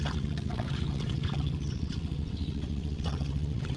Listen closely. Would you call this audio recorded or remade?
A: remade